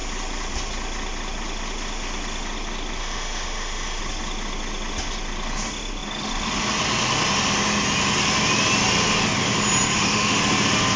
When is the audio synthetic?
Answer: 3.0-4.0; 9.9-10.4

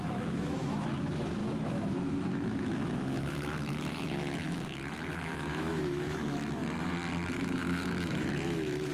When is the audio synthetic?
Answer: 0.0-6.6; 7.3-8.9